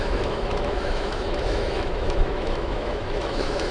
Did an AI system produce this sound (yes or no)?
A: yes